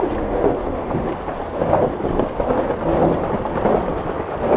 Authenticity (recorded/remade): recorded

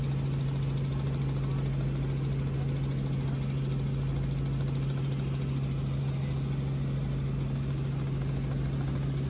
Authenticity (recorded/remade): recorded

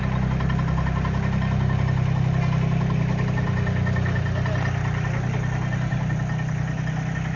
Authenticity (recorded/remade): recorded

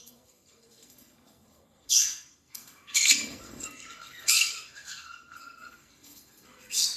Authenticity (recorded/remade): remade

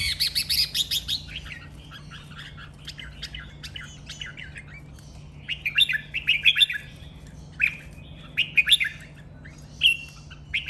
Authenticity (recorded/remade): recorded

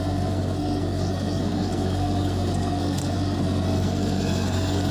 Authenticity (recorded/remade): remade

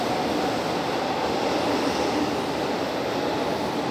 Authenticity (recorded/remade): recorded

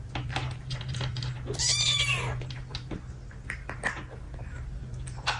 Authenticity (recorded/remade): recorded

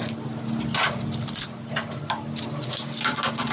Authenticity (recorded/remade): recorded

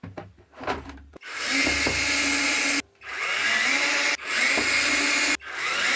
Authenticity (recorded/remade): recorded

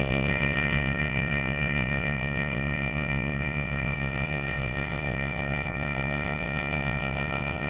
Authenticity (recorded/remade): remade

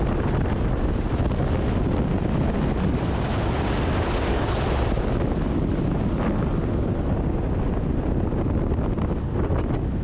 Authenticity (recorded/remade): recorded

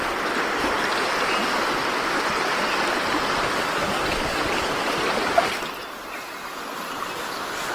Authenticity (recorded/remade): recorded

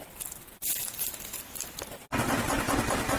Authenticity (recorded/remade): recorded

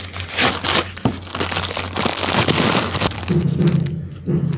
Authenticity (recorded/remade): recorded